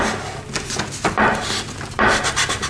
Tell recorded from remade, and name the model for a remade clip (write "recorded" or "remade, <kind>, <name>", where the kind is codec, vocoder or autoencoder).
recorded